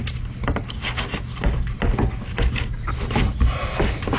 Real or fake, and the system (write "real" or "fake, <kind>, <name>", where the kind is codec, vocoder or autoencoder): real